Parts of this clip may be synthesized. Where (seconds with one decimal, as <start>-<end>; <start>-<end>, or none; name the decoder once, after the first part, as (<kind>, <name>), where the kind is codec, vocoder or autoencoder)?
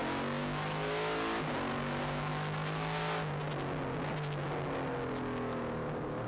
none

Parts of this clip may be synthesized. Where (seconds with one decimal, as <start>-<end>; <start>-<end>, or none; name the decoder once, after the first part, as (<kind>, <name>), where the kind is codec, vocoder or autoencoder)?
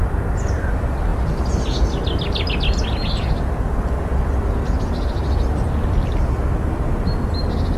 none